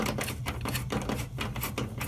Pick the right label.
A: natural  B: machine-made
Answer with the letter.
A